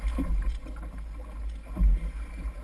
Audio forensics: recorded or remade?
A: recorded